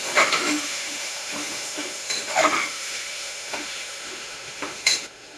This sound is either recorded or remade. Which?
remade